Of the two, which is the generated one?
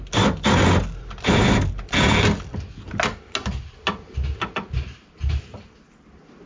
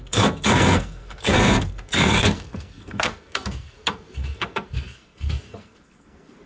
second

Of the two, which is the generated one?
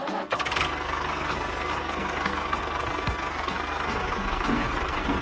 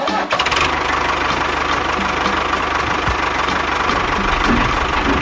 first